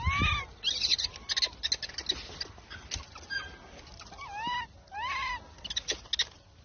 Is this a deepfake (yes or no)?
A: no